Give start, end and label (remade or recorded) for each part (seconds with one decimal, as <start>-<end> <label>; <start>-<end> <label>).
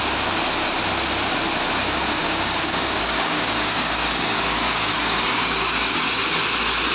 0.0-2.2 recorded; 2.2-6.3 remade; 6.3-6.9 recorded